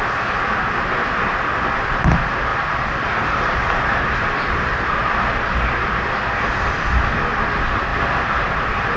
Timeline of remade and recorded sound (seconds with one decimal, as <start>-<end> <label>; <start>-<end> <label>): 0.0-2.5 recorded; 2.5-4.9 remade; 4.9-7.9 recorded; 7.9-9.0 remade